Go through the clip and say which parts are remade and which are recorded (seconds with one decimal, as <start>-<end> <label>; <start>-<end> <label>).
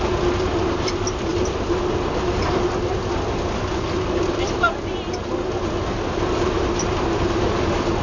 0.0-8.0 recorded